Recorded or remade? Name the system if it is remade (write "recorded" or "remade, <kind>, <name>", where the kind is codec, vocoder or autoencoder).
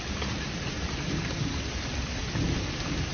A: recorded